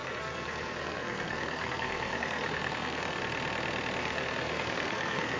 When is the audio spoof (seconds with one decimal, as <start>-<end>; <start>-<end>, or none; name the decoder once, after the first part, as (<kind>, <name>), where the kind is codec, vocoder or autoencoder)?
0.0-3.2 (codec, SNAC); 4.0-5.4